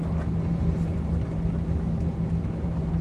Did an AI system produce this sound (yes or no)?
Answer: no